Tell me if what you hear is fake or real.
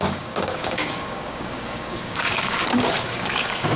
fake